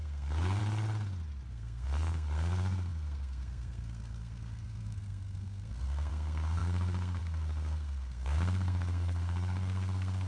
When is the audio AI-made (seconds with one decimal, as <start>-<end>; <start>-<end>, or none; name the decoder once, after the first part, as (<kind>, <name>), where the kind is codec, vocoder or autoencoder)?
0.0-0.6 (codec, SNAC); 1.5-10.3